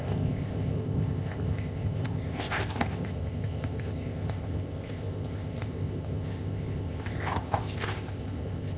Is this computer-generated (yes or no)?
yes